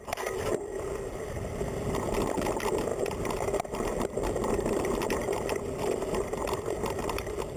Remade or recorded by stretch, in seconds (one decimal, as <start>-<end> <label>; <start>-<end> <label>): 0.0-7.6 recorded